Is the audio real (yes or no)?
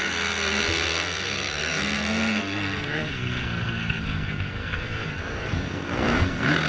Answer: no